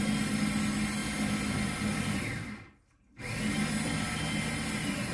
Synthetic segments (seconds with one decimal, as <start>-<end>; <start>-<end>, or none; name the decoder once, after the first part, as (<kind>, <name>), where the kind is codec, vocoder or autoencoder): none